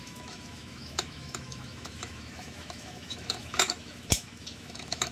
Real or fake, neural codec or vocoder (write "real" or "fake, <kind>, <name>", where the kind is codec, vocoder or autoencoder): fake, autoencoder, DAC-VAE